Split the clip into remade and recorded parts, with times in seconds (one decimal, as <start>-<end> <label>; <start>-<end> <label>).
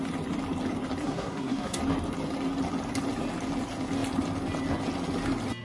0.0-1.0 recorded; 1.0-1.8 remade; 1.8-5.6 recorded